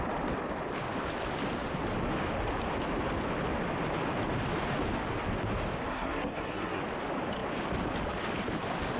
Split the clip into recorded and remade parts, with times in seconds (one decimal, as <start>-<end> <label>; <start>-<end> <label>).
0.0-5.9 recorded; 5.9-6.8 remade; 6.8-9.0 recorded

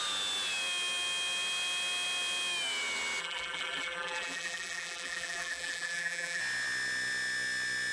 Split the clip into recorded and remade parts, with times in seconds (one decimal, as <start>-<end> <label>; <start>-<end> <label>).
0.0-3.2 recorded; 3.2-6.4 remade; 6.4-7.9 recorded

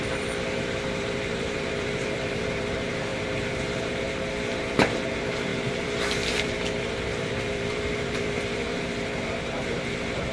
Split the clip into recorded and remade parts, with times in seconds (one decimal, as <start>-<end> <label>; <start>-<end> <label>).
0.0-10.3 remade

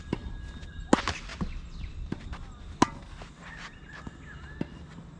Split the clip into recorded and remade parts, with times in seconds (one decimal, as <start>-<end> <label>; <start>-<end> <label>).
0.0-5.2 recorded